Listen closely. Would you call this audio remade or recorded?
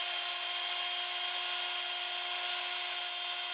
recorded